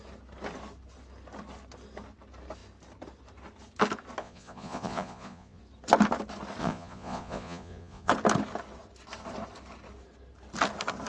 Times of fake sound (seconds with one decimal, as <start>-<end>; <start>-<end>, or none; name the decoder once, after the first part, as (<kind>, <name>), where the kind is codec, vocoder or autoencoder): 4.2-5.6 (vocoder, Vocos); 6.6-8.1

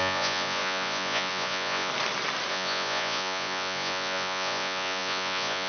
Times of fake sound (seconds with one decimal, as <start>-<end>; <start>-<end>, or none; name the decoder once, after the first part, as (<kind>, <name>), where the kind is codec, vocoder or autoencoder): 0.0-1.9 (vocoder, Vocos); 2.5-5.7